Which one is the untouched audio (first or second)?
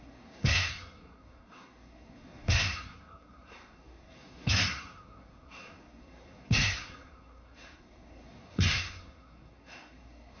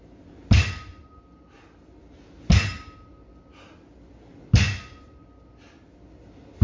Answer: second